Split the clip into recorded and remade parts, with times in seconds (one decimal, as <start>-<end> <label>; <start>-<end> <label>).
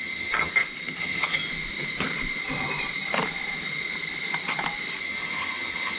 0.0-0.5 remade; 0.5-1.0 recorded; 1.0-1.4 remade; 1.4-5.0 recorded; 5.0-6.0 remade